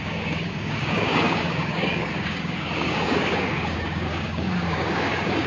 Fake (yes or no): yes